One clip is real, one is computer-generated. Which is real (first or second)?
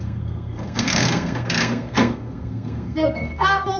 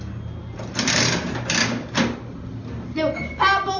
second